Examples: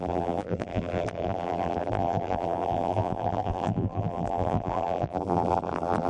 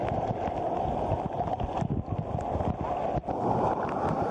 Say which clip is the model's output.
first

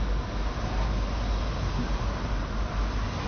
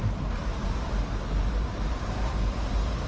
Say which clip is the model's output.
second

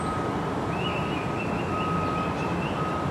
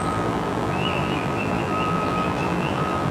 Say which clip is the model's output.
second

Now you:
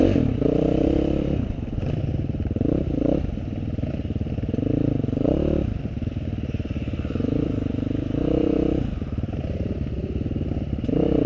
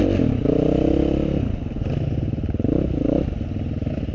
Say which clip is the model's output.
first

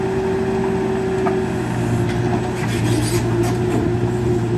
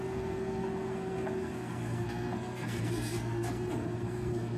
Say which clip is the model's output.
second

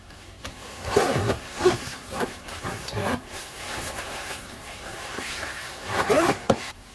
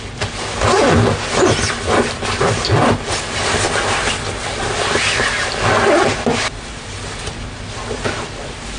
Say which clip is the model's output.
first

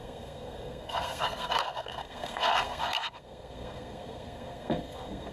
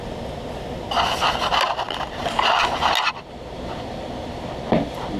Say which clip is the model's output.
first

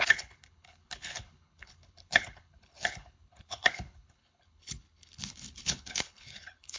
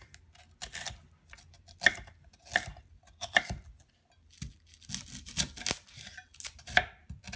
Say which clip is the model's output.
first